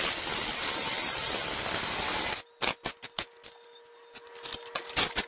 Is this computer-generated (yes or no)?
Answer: no